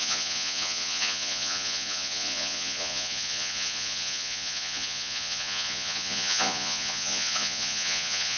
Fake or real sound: fake